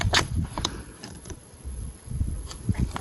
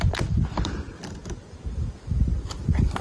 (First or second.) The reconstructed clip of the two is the first